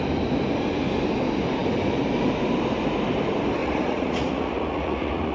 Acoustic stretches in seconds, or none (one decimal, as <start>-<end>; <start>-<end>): 0.0-3.6